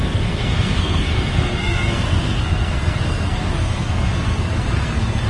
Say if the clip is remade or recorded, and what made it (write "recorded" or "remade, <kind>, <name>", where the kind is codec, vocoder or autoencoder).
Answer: remade, codec, SNAC